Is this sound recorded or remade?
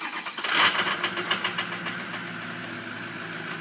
recorded